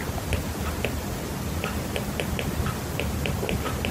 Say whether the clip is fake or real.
real